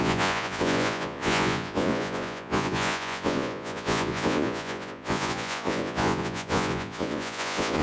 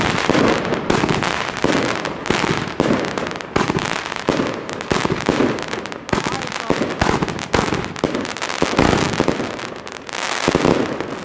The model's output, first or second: first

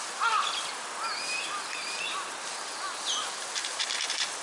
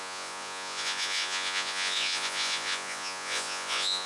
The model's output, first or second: second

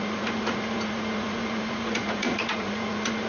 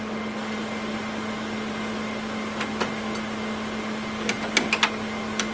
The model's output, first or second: first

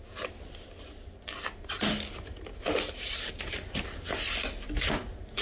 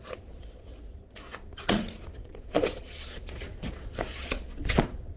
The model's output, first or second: second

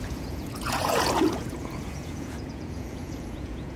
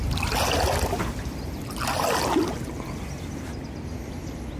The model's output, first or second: first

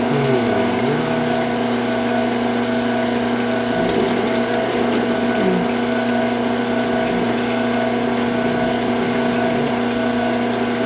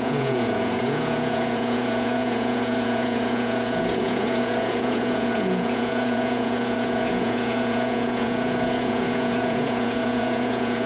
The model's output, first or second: second